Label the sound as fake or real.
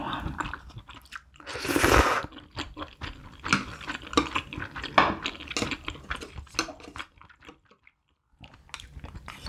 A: real